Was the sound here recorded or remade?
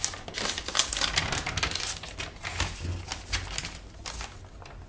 recorded